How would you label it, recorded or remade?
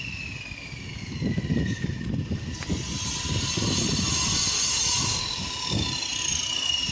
recorded